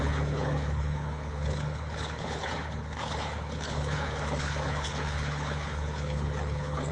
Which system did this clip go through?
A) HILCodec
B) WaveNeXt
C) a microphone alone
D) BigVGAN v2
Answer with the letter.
A